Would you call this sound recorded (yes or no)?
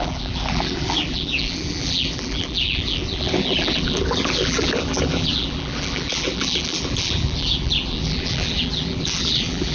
no